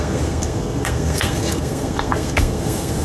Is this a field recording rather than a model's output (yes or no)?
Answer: no